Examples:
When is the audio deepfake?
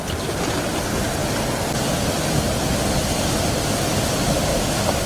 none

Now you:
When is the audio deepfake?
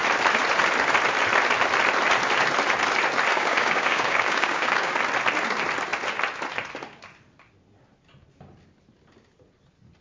3.3-5.0 (codec, DAC)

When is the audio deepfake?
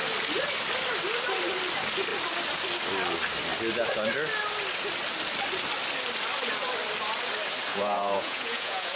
7.7-9.0 (vocoder, Vocos)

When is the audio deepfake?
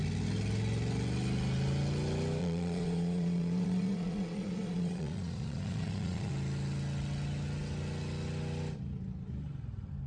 2.4-6.3 (vocoder, Vocos)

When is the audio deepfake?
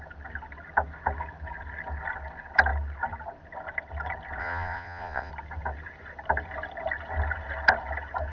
4.4-5.3 (vocoder, Vocos)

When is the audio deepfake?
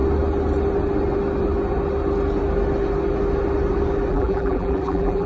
4.1-5.3 (vocoder, BigVGAN v2)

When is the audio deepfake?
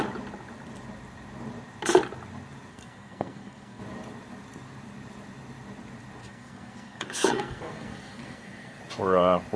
2.7-3.8 (codec, SNAC); 6.2-8.8